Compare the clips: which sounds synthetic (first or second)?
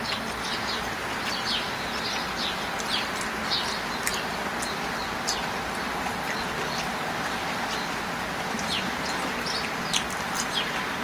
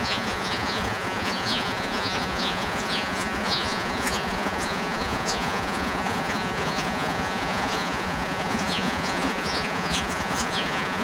second